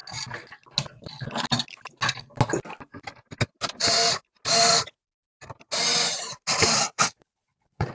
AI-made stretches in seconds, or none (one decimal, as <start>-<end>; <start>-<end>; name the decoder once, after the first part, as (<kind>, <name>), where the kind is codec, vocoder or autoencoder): 6.9-7.9 (vocoder, Vocos)